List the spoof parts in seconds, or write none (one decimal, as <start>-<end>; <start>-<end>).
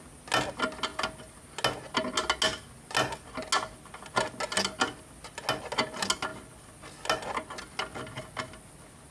none